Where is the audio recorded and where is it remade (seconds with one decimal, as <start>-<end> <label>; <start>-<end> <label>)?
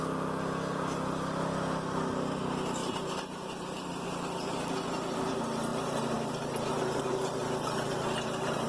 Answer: 0.0-2.8 recorded; 2.8-4.6 remade; 4.6-5.7 recorded; 5.7-8.7 remade